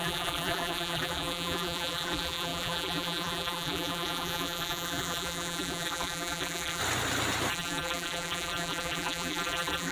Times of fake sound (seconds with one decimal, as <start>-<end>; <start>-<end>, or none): 0.0-6.8; 7.5-9.9